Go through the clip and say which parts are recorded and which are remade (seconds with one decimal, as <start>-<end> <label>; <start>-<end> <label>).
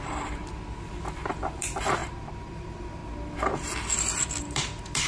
0.0-0.4 remade; 0.4-1.3 recorded; 1.3-2.0 remade; 2.0-2.5 recorded; 2.5-3.0 remade; 3.0-4.4 recorded; 4.4-5.1 remade